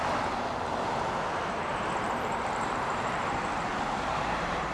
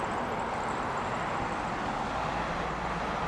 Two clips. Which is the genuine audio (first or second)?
second